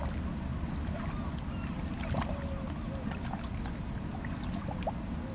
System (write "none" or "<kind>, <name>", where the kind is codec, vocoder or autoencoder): none